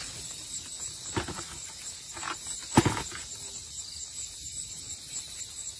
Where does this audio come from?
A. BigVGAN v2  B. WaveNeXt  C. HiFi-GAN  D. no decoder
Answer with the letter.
D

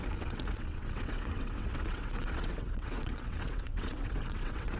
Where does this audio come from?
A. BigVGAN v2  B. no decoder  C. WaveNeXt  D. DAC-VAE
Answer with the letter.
C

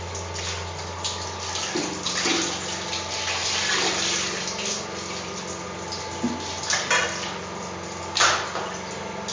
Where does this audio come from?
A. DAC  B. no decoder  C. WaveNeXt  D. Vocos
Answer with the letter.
B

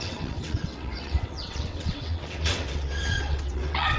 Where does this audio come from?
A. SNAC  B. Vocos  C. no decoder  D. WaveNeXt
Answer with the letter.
D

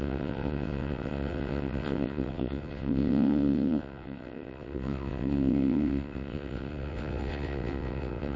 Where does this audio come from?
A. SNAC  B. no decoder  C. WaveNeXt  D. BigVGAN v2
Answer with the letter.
C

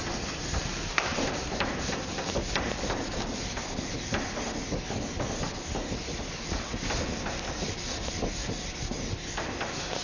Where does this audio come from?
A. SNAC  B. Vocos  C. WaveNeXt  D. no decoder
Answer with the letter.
D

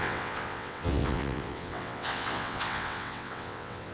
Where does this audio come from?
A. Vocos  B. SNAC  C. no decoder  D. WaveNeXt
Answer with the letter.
D